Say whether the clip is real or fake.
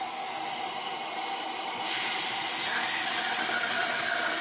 real